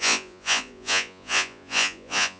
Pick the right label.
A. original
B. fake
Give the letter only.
B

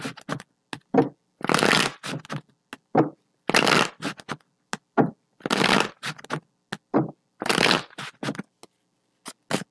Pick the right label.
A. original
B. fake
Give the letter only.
A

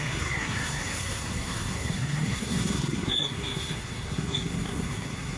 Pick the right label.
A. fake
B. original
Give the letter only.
A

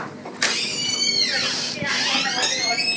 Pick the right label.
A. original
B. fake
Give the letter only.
A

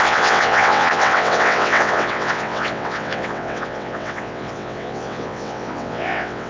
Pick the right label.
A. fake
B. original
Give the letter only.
A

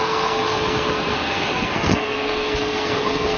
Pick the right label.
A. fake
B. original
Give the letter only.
A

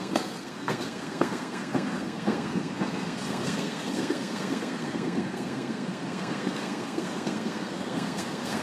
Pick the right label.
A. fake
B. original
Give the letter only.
A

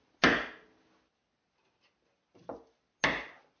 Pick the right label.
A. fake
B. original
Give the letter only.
B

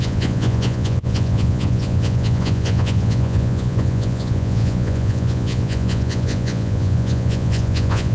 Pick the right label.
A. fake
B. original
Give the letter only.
A